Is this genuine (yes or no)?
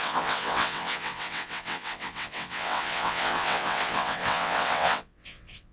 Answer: no